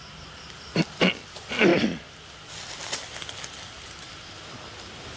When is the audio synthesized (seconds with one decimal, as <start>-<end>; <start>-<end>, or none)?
none